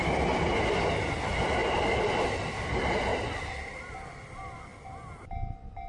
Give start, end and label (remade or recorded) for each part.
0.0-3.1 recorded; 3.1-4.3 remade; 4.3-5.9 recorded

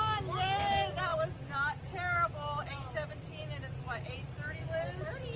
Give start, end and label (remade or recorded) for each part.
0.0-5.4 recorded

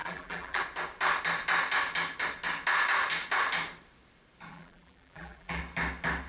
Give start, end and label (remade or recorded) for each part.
0.0-0.6 remade; 0.6-4.5 recorded; 4.5-5.6 remade; 5.6-6.3 recorded

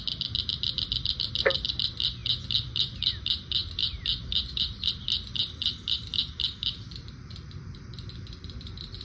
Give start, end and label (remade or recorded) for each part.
0.0-9.0 remade

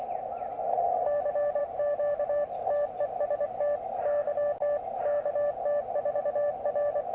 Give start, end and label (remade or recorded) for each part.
0.0-1.6 recorded; 1.6-2.5 remade; 2.5-7.1 recorded